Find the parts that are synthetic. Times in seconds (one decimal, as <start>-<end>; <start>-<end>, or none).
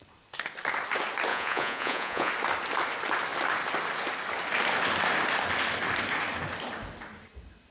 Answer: 1.3-2.3